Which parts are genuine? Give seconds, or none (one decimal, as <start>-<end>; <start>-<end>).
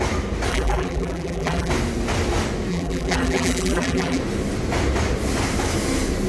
0.0-0.5; 1.7-2.7; 4.2-6.3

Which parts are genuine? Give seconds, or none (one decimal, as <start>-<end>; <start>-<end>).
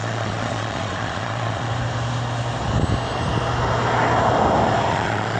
1.7-4.9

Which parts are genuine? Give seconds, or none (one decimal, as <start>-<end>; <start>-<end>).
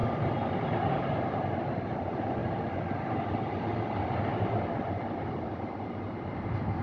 0.0-2.4; 6.0-6.8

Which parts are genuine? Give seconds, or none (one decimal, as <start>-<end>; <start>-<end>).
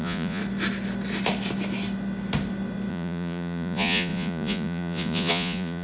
0.4-2.9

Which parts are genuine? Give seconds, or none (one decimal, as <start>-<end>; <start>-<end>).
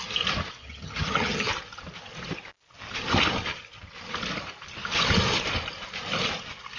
0.0-0.6; 1.5-6.8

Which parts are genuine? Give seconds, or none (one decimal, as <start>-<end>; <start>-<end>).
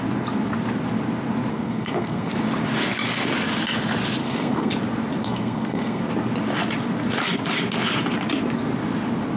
0.0-1.5; 2.3-4.2; 4.7-5.2; 6.0-9.4